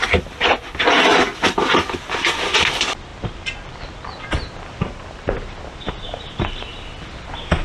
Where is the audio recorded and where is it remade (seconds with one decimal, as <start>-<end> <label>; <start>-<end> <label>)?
0.0-7.6 recorded

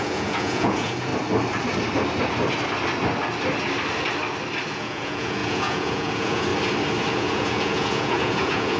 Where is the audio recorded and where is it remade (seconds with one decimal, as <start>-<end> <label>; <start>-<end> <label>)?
0.0-1.1 remade; 1.1-4.7 recorded; 4.7-6.5 remade; 6.5-7.1 recorded; 7.1-8.8 remade